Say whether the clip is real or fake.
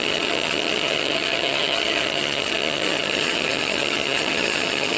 fake